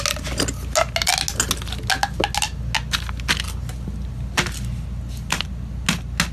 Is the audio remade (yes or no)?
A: no